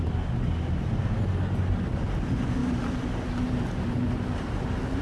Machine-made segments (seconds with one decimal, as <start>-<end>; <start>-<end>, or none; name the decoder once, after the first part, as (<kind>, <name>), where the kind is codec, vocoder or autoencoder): none